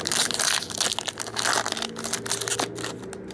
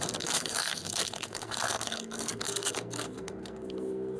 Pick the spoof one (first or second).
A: second